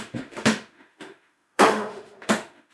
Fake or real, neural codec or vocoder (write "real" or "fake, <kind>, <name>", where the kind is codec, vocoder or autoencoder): fake, autoencoder, DAC-VAE